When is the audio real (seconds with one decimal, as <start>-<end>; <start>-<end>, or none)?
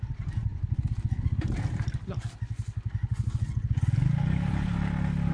0.0-5.3